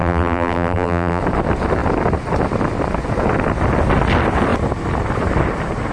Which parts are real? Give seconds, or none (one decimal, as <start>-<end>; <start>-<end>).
1.2-5.9